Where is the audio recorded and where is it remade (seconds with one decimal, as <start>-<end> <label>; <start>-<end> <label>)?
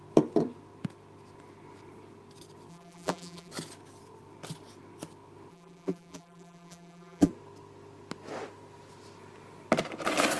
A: 0.0-2.7 recorded; 2.7-3.5 remade; 3.5-5.5 recorded; 5.5-7.3 remade; 7.3-10.4 recorded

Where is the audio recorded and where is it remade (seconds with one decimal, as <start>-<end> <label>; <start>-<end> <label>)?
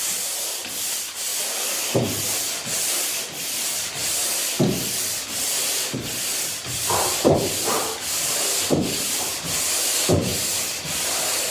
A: 0.0-1.3 remade; 1.3-3.0 recorded; 3.0-4.0 remade; 4.0-6.8 recorded; 6.8-9.3 remade; 9.3-9.8 recorded; 9.8-11.5 remade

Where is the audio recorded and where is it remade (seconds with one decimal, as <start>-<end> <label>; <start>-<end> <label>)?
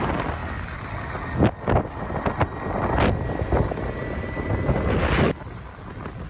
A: 0.0-6.3 recorded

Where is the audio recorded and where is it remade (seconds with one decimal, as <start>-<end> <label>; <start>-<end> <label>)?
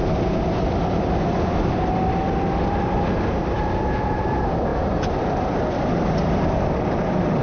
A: 0.0-7.4 remade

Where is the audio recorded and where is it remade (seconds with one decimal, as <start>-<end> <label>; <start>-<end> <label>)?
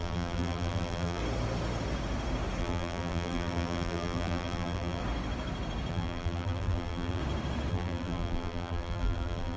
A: 0.0-1.2 remade; 1.2-2.6 recorded; 2.6-5.0 remade; 5.0-5.9 recorded; 5.9-7.2 remade; 7.2-7.7 recorded; 7.7-9.6 remade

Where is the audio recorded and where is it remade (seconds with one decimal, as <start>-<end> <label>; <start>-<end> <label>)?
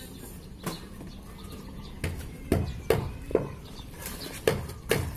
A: 0.0-1.1 recorded; 1.1-1.9 remade; 1.9-3.3 recorded; 3.3-5.2 remade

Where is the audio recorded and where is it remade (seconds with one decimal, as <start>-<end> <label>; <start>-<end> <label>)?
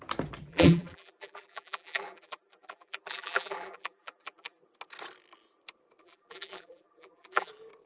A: 0.0-0.5 recorded; 0.5-4.6 remade; 4.6-6.0 recorded; 6.0-7.5 remade; 7.5-7.9 recorded